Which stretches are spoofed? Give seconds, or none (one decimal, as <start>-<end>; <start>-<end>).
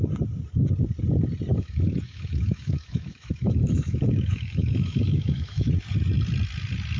1.5-5.7